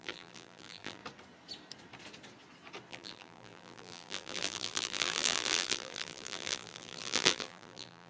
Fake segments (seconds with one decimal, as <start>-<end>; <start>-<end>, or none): 0.0-1.0; 2.9-8.1